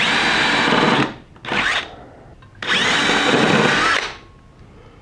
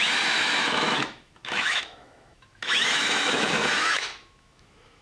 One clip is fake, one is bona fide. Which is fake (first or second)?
second